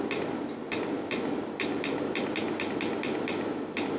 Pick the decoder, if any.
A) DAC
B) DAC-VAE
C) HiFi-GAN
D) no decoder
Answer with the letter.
D